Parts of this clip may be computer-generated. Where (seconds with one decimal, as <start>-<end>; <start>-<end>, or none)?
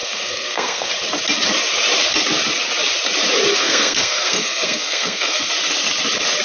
0.0-0.9; 3.5-5.5